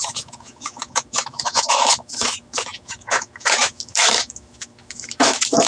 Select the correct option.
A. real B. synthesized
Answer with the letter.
B